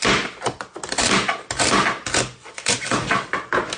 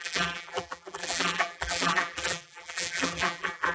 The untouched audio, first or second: first